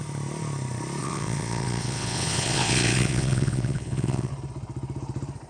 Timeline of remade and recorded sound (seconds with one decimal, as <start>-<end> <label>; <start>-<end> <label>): 0.0-1.0 recorded; 1.0-4.3 remade; 4.3-5.5 recorded